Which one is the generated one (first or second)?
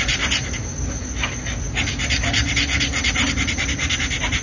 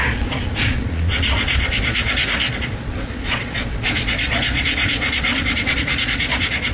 second